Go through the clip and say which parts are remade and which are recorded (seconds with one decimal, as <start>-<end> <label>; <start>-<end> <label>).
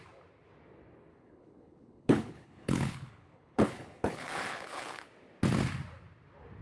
0.0-1.1 recorded; 1.1-5.1 remade; 5.1-6.6 recorded